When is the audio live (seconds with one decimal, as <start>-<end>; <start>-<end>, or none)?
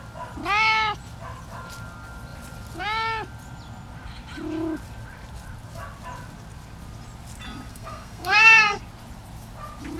0.0-7.7; 8.8-10.0